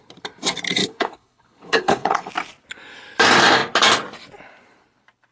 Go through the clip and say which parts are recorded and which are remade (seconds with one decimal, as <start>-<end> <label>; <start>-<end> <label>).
0.0-0.8 recorded; 0.8-2.3 remade; 2.3-5.3 recorded